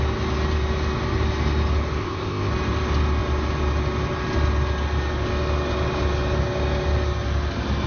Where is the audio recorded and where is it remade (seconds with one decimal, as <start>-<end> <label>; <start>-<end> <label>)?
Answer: 0.0-2.0 recorded; 2.0-2.5 remade; 2.5-7.9 recorded